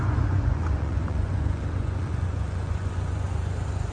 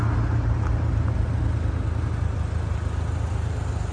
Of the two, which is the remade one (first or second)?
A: first